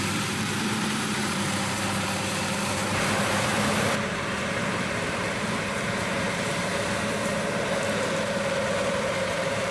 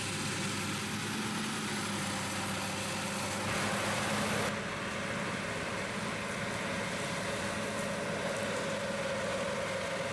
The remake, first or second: first